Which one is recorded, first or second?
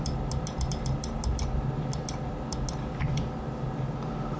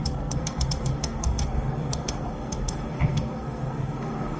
first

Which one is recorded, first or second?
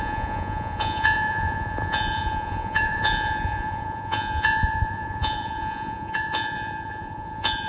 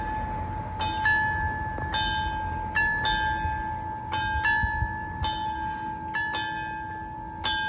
second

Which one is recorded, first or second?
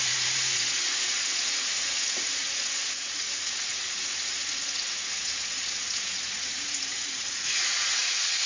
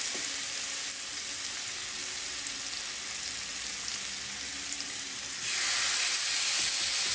second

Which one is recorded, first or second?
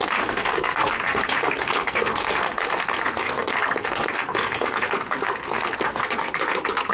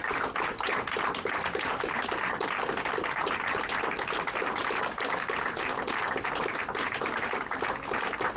second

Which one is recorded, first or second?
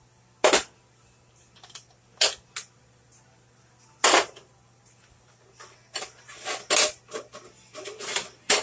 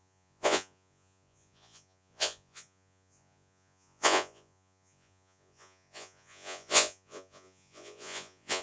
first